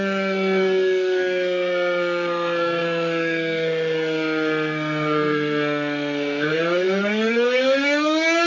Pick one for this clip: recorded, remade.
remade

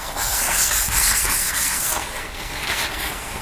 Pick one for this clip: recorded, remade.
remade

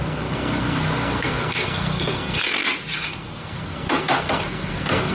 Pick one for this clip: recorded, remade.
remade